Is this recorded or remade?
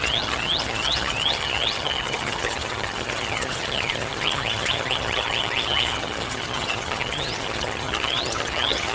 remade